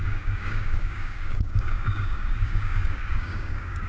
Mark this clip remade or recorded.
remade